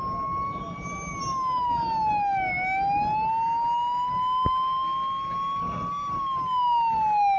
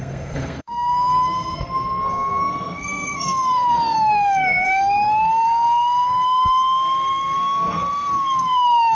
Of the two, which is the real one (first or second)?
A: first